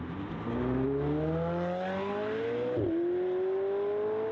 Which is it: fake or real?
real